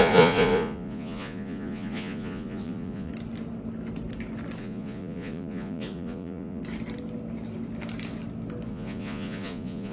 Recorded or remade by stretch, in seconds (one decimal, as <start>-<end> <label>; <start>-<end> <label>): 0.0-3.1 remade; 3.1-4.6 recorded; 4.6-6.6 remade; 6.6-8.7 recorded; 8.7-9.9 remade